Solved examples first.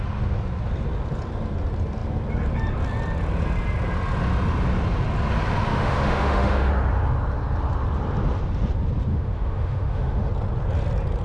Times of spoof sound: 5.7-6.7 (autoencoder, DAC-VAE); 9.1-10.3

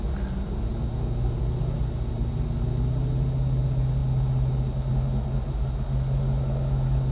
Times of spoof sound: none

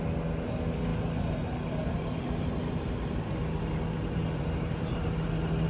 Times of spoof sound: none